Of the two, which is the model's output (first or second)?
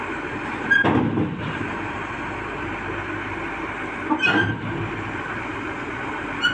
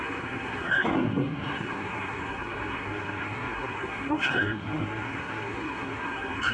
second